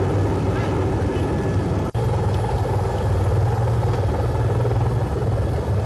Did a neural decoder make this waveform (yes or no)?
no